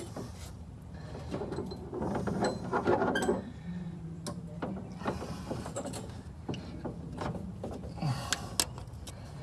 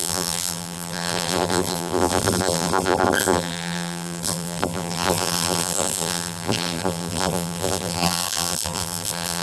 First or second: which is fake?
second